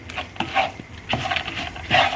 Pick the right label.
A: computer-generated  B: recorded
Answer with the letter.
B